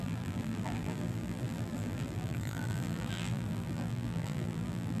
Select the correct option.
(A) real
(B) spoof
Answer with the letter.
B